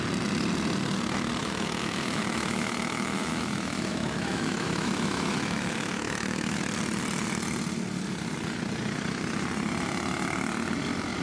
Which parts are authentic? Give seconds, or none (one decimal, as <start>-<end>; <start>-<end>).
0.0-1.4; 6.6-11.2